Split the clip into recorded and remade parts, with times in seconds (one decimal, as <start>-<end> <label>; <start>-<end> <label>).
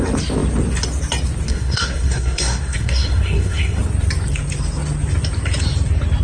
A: 0.0-1.5 recorded; 1.5-3.8 remade; 3.8-6.2 recorded